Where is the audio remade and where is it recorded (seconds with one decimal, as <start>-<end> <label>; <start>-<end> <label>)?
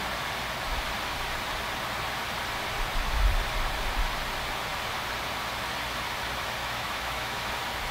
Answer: 0.0-6.6 recorded; 6.6-7.5 remade; 7.5-7.9 recorded